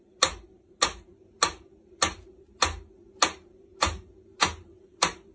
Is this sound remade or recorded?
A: recorded